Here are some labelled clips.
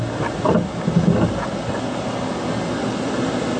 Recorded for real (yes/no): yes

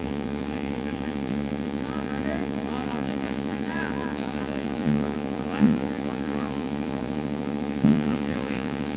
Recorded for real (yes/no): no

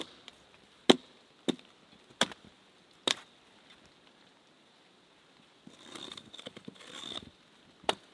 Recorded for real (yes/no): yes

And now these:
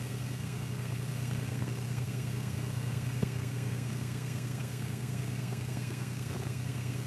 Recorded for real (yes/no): no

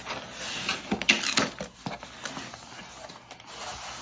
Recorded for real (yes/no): yes